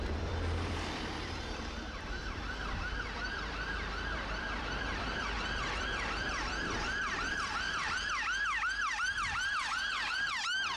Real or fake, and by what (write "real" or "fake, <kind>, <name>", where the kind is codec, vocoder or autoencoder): fake, vocoder, BigVGAN v2